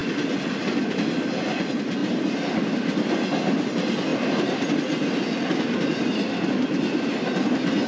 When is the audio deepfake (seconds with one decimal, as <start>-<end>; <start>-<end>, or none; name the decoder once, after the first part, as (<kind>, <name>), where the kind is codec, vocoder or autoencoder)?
none